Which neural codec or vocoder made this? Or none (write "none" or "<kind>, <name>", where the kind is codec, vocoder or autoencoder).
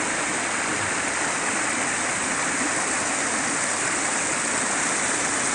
none